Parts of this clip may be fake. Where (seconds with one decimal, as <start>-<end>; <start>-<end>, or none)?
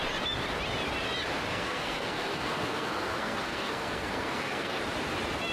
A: 1.5-4.8